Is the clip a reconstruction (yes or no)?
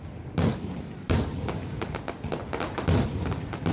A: no